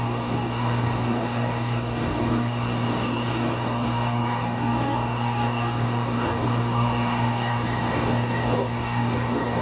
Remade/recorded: remade